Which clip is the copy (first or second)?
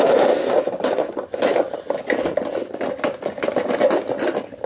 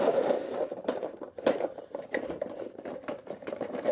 second